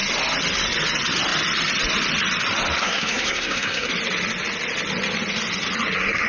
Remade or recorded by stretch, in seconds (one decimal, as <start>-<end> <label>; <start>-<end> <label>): 0.0-2.8 recorded; 2.8-3.9 remade; 3.9-6.3 recorded